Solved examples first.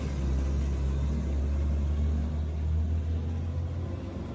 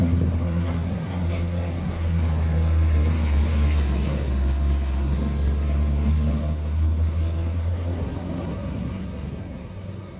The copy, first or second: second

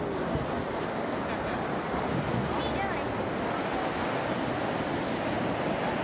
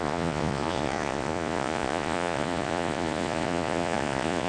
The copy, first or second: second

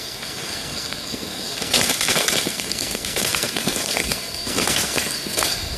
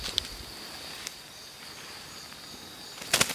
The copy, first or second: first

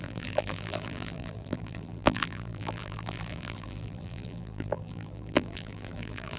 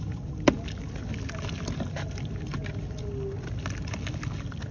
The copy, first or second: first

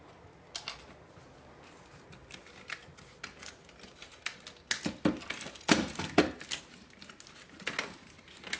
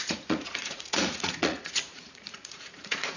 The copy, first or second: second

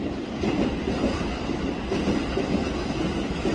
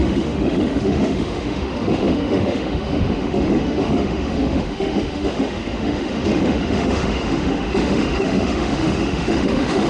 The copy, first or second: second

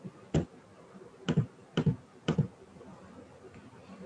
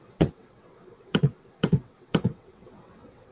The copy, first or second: second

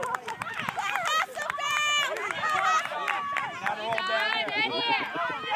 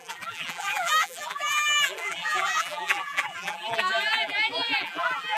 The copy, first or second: second